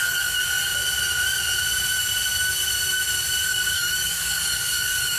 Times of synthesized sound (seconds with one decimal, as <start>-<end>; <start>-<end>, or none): 0.0-0.4; 3.5-5.2

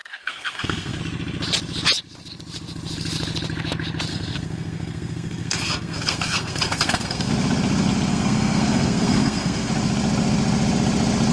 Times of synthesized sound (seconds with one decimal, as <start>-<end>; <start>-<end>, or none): 0.0-1.0; 4.1-7.3; 8.1-9.7

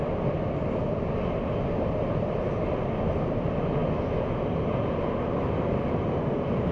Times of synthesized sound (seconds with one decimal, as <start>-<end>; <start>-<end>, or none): none

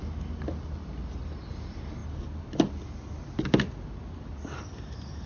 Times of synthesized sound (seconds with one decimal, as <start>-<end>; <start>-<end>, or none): none

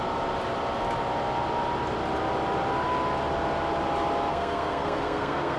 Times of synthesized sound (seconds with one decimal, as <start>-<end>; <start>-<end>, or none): 4.3-5.6

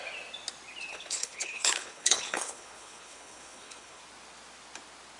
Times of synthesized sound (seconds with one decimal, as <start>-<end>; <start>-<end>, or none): 0.9-4.0